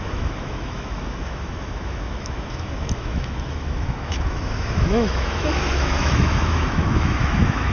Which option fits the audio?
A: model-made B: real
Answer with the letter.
A